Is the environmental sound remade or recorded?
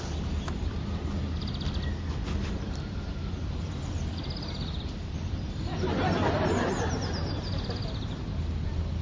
recorded